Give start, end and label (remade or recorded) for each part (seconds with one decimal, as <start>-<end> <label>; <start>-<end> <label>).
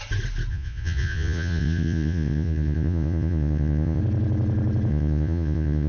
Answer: 0.0-0.5 recorded; 0.5-4.0 remade; 4.0-4.9 recorded; 4.9-5.9 remade